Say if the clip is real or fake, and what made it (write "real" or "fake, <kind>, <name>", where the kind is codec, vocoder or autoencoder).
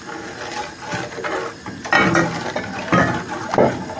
real